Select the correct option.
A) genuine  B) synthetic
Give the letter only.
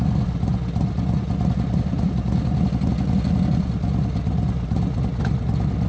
A